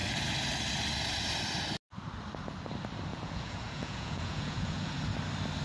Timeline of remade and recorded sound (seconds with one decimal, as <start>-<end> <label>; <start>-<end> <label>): 0.0-3.1 recorded; 3.1-5.0 remade; 5.0-5.6 recorded